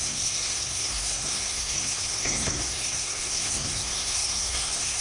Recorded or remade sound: remade